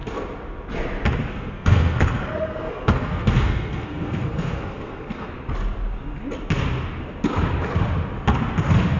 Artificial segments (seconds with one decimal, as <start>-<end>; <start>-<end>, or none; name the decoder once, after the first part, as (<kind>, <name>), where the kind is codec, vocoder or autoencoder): 1.3-5.3 (codec, SNAC)

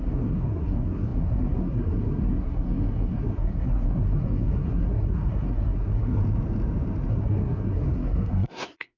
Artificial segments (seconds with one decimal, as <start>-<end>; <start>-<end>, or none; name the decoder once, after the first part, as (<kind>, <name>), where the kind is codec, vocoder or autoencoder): 0.0-6.2 (codec, SNAC); 7.1-9.0

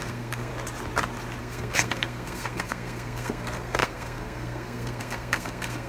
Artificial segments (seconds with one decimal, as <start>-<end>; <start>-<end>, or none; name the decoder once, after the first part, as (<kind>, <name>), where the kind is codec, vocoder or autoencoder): 0.0-0.5 (codec, SNAC); 1.4-5.9

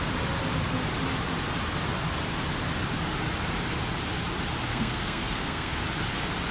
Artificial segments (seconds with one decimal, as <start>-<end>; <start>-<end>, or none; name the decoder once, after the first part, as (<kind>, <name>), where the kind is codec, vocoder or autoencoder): 4.7-5.8 (codec, SNAC)

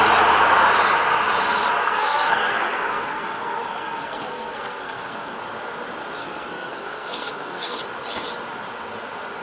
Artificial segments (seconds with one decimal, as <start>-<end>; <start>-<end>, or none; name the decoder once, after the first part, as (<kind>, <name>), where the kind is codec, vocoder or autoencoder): 1.8-5.4 (codec, SNAC); 6.2-7.8

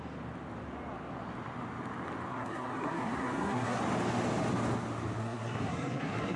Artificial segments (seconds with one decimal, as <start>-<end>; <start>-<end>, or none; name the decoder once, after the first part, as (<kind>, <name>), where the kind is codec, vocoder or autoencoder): 2.3-3.8 (codec, SNAC); 5.2-6.4

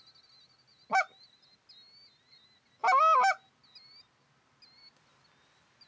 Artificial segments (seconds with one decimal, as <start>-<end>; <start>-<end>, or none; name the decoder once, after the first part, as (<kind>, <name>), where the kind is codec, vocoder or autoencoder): none

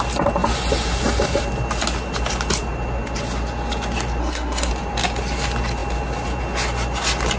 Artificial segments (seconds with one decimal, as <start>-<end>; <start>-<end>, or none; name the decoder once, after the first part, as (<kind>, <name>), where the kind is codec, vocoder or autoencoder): 4.2-4.7 (codec, SNAC)